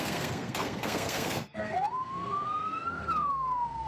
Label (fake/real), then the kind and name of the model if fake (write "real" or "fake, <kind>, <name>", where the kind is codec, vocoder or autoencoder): fake, codec, SNAC